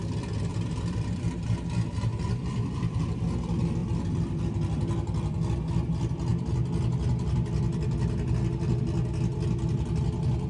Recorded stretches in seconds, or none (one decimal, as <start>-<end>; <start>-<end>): 0.0-0.5; 3.0-3.8; 4.4-10.5